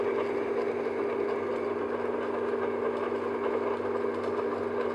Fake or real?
real